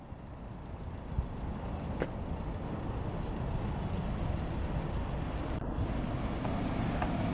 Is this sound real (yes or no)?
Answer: yes